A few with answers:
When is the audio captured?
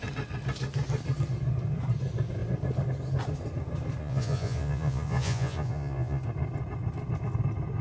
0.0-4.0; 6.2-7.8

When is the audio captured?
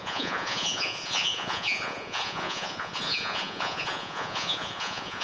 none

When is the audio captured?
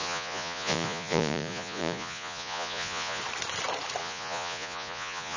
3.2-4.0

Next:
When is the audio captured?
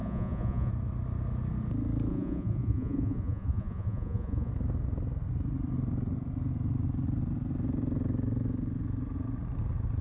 0.7-2.1; 4.5-10.0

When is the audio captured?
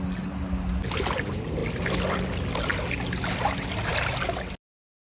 0.0-5.1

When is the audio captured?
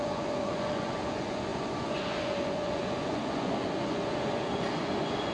none